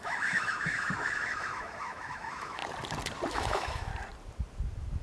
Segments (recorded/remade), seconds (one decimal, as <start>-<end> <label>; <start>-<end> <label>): 0.0-2.6 remade; 2.6-3.3 recorded; 3.3-3.9 remade; 3.9-5.0 recorded